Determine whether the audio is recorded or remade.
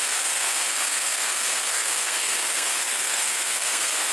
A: remade